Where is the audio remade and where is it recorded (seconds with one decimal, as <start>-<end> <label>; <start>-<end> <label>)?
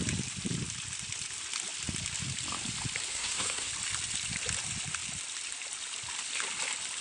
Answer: 0.0-3.1 recorded; 3.1-3.7 remade; 3.7-7.0 recorded